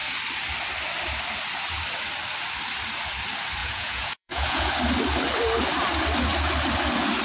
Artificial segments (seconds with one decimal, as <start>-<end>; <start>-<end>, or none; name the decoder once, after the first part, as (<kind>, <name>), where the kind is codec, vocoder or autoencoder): 3.6-4.7 (vocoder, Vocos)